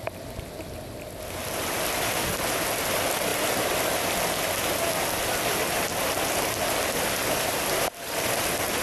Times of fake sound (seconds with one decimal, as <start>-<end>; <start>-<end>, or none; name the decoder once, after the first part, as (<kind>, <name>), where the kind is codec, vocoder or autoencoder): none